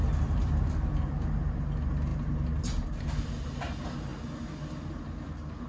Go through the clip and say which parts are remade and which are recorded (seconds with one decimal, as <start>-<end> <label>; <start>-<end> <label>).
0.0-2.1 recorded; 2.1-3.5 remade; 3.5-5.7 recorded